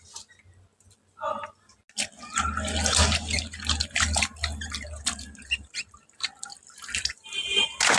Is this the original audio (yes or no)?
yes